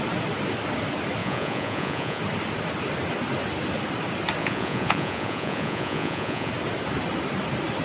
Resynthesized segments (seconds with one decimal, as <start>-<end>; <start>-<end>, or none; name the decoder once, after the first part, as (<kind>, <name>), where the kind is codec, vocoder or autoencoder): 1.2-2.2 (vocoder, Vocos); 4.4-6.5

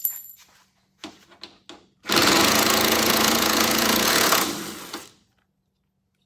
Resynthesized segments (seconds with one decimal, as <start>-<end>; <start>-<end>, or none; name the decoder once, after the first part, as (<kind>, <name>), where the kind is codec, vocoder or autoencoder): 2.2-4.5 (vocoder, Vocos)

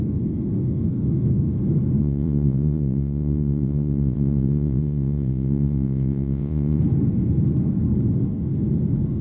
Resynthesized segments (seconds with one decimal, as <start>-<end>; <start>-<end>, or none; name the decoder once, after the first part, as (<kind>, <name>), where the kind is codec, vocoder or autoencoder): 2.0-6.8 (vocoder, Vocos)

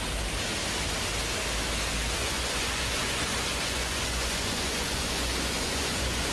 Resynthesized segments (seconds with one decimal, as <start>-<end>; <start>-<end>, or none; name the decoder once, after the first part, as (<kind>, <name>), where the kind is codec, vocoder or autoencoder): 2.2-6.3 (vocoder, Vocos)

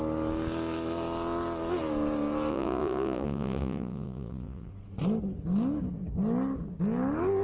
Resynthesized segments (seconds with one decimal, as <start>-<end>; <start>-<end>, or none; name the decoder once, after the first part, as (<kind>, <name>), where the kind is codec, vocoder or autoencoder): 2.5-4.7 (vocoder, Vocos)

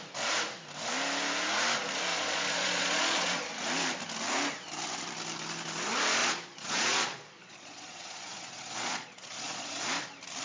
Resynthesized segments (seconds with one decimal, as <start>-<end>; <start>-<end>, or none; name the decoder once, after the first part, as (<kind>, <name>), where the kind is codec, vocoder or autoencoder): 2.1-3.4 (vocoder, Vocos); 6.2-9.8